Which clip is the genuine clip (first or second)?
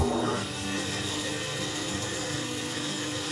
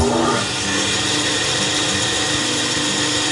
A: second